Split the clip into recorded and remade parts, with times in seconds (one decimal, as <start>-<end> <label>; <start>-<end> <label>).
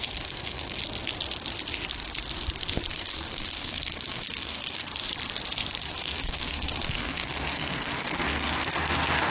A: 0.0-0.8 remade; 0.8-2.9 recorded; 2.9-4.9 remade; 4.9-5.8 recorded; 5.8-9.3 remade